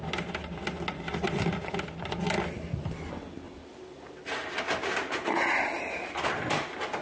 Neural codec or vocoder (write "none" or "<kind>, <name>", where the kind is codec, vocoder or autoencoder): none